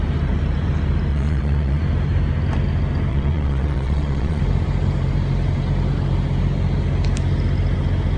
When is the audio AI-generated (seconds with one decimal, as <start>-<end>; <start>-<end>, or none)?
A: 1.1-1.8; 3.1-4.4